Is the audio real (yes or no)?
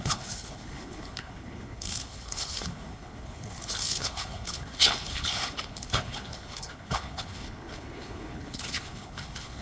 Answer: no